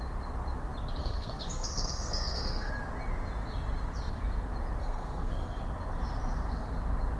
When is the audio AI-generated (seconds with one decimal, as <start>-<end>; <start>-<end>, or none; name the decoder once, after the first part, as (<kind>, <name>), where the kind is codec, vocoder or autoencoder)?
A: 1.0-2.7 (codec, SNAC); 4.8-5.6